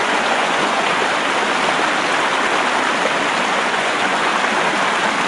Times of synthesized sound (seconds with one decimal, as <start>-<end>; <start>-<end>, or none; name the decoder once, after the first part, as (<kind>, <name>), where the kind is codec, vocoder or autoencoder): 0.0-1.0 (vocoder, Vocos); 3.5-4.3